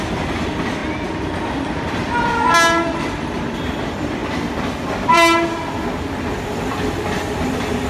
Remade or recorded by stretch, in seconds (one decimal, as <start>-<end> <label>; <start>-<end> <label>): 0.0-0.8 remade; 0.8-3.0 recorded; 3.0-4.2 remade; 4.2-6.3 recorded; 6.3-7.9 remade